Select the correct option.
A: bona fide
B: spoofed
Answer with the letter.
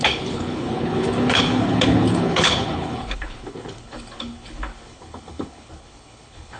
B